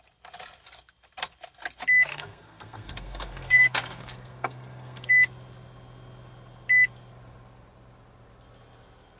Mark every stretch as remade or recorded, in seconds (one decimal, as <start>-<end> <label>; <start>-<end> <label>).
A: 0.0-2.1 recorded; 2.1-5.1 remade; 5.1-9.2 recorded